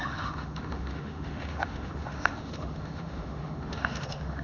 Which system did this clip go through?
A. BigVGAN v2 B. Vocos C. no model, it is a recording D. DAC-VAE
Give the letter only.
D